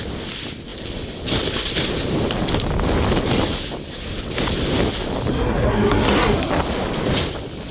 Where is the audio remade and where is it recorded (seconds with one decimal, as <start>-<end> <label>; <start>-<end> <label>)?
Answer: 0.0-5.3 recorded; 5.3-6.5 remade; 6.5-7.7 recorded